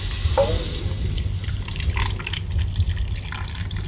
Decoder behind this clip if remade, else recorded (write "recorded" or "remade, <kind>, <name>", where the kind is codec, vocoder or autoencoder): recorded